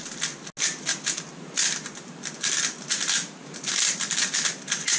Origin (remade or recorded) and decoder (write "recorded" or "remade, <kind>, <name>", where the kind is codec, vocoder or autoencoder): recorded